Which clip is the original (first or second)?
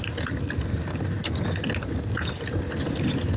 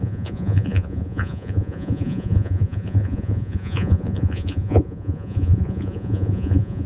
first